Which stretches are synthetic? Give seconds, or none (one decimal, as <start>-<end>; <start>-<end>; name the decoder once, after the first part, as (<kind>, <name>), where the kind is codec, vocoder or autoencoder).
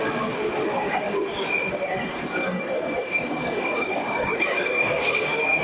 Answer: 2.0-5.6 (codec, DAC)